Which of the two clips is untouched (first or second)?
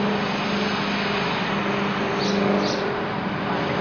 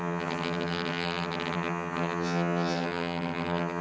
first